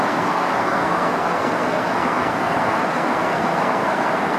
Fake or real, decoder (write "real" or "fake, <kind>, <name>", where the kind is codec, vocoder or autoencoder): fake, codec, SNAC